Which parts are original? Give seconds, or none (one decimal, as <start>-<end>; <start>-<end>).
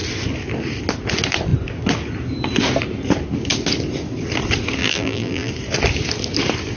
0.0-4.8; 5.5-6.8